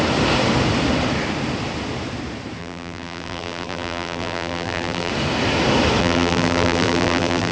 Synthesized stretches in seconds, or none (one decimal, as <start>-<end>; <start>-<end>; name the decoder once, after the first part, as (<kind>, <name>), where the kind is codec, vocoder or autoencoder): 2.6-5.1 (vocoder, BigVGAN v2); 6.0-7.5